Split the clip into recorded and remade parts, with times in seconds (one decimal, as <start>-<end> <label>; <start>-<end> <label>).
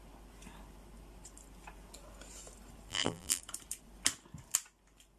0.0-2.9 recorded; 2.9-3.4 remade; 3.4-5.2 recorded